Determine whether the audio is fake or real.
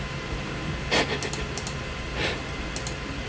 real